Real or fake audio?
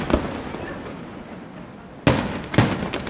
real